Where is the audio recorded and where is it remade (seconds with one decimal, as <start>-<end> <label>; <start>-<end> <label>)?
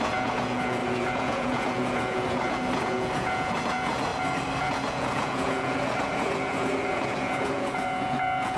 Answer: 0.0-4.1 remade; 4.1-4.6 recorded; 4.6-8.6 remade